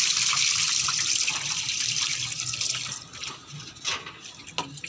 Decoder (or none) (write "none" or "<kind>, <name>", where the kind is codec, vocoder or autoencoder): none